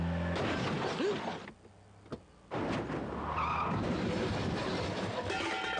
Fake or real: real